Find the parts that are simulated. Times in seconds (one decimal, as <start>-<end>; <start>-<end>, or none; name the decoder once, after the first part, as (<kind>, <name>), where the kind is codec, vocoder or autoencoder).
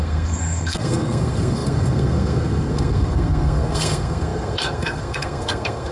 0.0-5.9 (codec, SNAC)